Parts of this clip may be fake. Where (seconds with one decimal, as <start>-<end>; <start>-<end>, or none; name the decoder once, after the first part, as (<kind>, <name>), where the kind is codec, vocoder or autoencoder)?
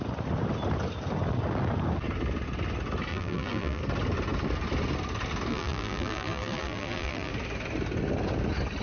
3.1-3.8 (vocoder, BigVGAN v2); 5.5-7.3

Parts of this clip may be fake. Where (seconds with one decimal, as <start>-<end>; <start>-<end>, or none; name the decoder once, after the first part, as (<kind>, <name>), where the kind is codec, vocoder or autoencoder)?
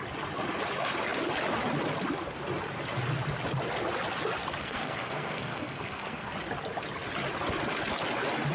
4.6-6.3 (codec, SNAC)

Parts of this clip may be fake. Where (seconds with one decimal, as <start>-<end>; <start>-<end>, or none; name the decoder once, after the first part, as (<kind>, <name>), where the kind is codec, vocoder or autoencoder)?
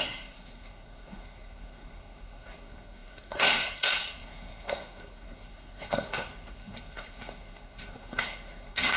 0.0-9.0 (codec, SNAC)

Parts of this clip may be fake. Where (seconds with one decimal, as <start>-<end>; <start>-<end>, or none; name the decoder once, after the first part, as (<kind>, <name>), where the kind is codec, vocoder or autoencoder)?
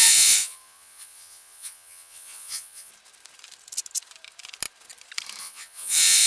0.0-2.9 (vocoder, Vocos); 5.4-6.3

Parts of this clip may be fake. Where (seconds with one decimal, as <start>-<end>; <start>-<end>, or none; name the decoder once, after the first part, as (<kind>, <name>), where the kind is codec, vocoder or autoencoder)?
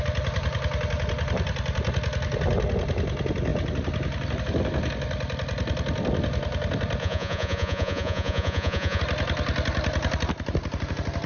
7.0-9.0 (vocoder, Vocos)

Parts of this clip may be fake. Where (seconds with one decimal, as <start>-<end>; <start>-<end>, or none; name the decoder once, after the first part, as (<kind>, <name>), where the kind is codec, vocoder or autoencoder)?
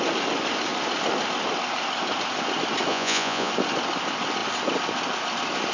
2.9-3.5 (vocoder, Vocos)